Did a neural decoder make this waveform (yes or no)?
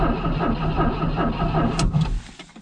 no